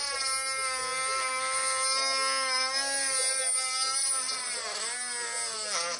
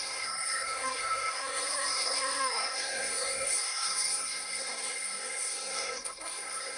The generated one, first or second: second